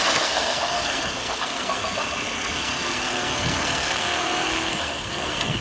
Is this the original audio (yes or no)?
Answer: no